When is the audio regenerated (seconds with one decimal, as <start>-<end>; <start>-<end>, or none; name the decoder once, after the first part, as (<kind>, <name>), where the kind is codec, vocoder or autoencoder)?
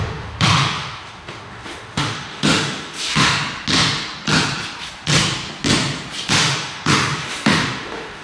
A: 0.0-3.4 (autoencoder, DAC-VAE); 6.3-8.2